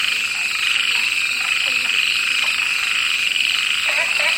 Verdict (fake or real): real